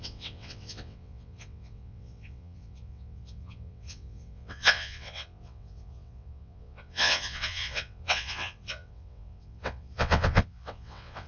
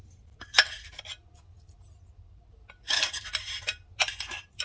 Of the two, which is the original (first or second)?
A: second